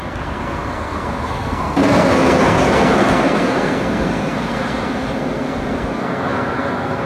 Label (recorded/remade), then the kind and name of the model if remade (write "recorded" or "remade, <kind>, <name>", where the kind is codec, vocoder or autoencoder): remade, codec, SNAC